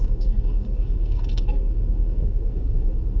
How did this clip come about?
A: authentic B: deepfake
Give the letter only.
B